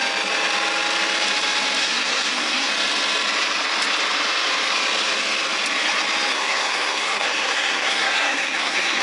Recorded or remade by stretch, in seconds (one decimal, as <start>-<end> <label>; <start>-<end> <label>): 0.0-1.8 recorded; 1.8-2.7 remade; 2.7-6.3 recorded; 6.3-9.0 remade